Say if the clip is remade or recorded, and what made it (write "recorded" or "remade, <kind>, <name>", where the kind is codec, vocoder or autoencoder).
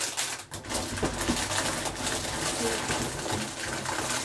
recorded